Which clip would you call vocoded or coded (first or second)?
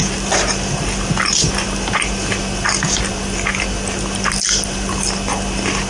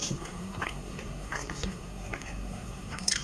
second